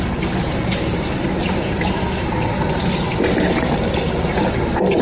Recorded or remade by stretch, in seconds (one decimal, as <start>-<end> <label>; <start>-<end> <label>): 0.0-1.4 recorded; 1.4-4.4 remade; 4.4-5.0 recorded